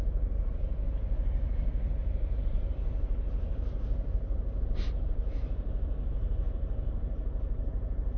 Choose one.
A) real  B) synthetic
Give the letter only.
A